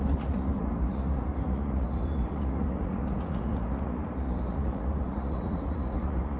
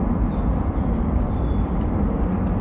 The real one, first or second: second